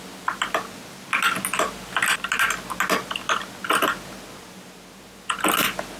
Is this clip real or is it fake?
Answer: real